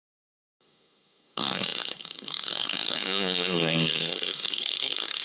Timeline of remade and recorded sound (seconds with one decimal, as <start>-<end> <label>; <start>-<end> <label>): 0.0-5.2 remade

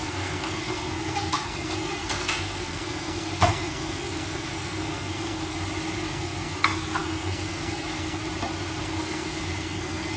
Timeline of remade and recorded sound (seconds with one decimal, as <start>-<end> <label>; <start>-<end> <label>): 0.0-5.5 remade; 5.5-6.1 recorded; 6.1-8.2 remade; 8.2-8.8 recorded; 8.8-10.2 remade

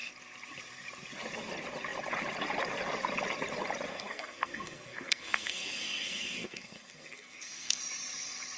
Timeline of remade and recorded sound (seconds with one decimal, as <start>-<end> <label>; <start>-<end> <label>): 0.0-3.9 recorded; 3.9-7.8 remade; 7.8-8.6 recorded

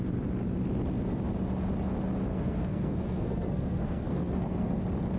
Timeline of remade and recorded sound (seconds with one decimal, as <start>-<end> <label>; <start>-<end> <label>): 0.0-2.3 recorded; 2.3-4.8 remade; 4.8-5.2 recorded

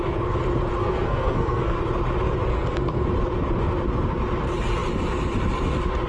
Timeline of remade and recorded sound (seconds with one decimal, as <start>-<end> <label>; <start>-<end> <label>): 0.0-0.8 recorded; 0.8-1.8 remade; 1.8-2.5 recorded; 2.5-3.1 remade; 3.1-6.1 recorded